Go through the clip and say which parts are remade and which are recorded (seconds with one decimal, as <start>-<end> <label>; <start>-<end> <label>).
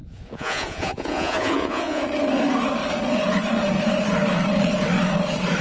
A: 0.0-2.0 remade; 2.0-5.6 recorded